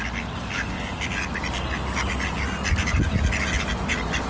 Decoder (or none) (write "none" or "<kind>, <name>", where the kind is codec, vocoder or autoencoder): none